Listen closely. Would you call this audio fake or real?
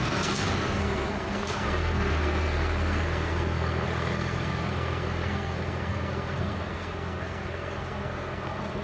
fake